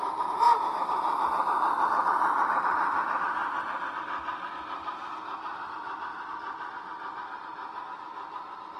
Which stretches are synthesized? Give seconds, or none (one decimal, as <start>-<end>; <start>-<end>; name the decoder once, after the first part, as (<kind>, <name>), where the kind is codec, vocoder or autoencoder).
none